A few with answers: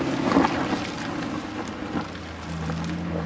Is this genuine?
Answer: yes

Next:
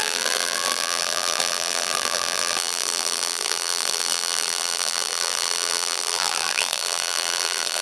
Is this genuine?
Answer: no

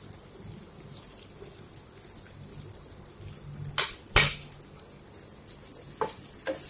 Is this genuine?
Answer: yes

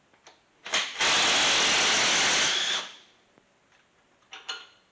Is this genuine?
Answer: yes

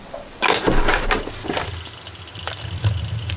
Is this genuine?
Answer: yes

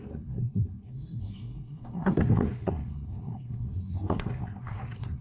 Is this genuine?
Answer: no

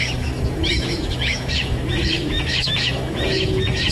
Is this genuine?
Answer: no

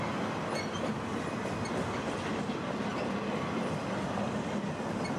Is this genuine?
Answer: yes